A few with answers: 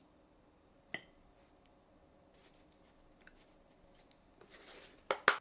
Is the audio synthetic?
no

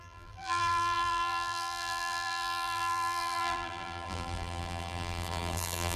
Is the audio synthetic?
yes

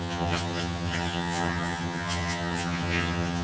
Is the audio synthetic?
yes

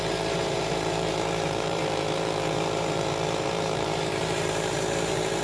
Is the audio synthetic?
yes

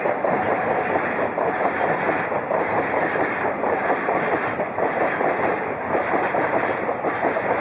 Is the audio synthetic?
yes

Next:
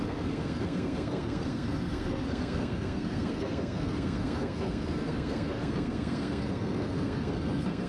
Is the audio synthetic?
yes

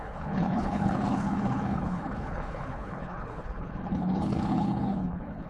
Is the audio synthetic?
yes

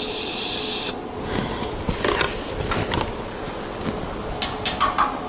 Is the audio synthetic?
no